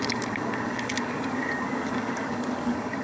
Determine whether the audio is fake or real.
fake